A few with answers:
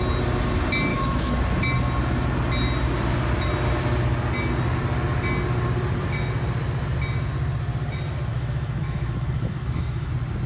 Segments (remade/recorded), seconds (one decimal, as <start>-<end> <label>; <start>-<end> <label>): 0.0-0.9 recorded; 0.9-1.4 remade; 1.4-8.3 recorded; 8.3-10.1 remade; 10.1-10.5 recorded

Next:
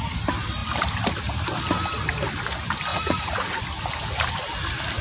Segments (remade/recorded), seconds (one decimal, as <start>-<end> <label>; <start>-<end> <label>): 0.0-2.9 recorded; 2.9-3.6 remade; 3.6-5.0 recorded

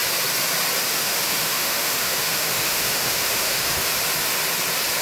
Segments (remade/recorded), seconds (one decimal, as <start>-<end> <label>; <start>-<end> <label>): 0.0-0.9 recorded; 0.9-3.9 remade; 3.9-5.0 recorded

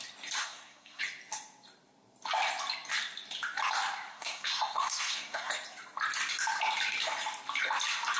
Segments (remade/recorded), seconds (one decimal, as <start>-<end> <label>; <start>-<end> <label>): 0.0-0.4 recorded; 0.4-1.0 remade; 1.0-4.1 recorded; 4.1-5.5 remade; 5.5-8.2 recorded